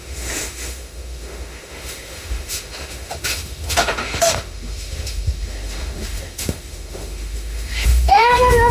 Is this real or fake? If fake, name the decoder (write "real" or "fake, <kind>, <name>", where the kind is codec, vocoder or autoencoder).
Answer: fake, autoencoder, DAC-VAE